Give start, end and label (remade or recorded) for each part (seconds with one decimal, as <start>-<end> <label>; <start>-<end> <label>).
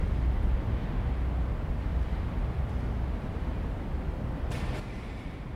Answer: 0.0-5.6 recorded